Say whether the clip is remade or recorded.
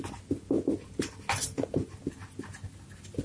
recorded